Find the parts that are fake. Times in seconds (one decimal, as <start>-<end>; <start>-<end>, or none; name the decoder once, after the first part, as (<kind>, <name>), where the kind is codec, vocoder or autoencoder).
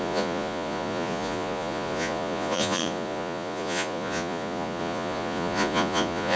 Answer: 0.0-6.4 (vocoder, Vocos)